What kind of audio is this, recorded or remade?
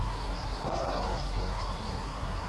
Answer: remade